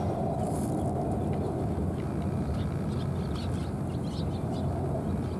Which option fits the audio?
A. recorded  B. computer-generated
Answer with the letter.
A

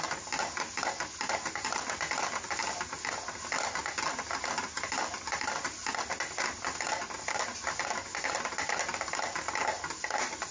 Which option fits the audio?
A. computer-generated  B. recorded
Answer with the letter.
B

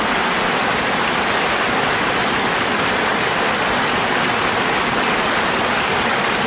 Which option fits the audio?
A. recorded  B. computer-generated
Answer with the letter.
A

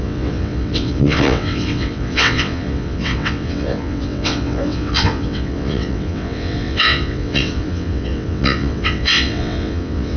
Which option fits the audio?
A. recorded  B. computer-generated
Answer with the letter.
B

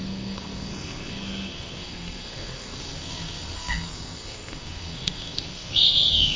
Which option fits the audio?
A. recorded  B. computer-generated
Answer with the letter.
B